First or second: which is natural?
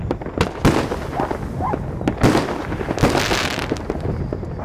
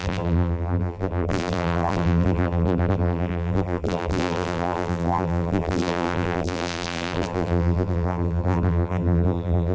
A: first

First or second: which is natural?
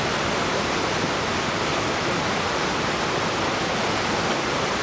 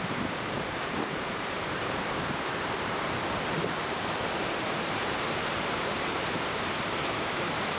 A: first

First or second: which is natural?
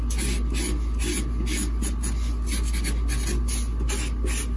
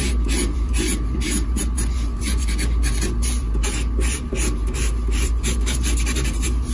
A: first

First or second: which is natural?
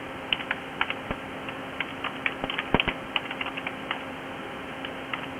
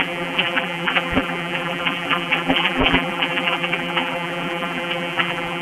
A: first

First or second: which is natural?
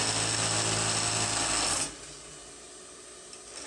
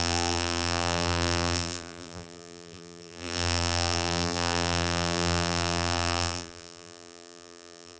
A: first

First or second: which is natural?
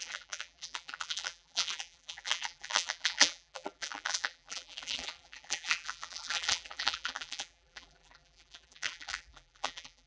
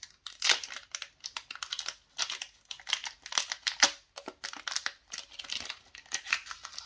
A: second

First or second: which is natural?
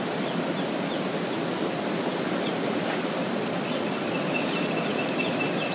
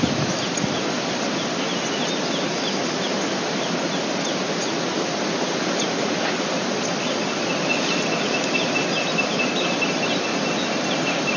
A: second